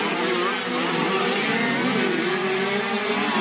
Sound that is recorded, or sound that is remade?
recorded